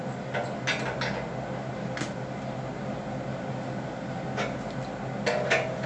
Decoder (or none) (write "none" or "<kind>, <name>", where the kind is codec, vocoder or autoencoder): none